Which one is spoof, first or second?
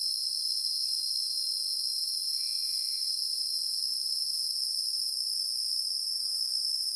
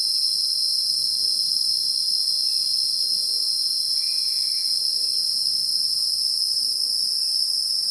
first